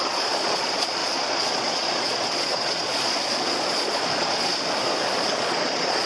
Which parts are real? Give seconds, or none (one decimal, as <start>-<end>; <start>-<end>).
4.5-5.3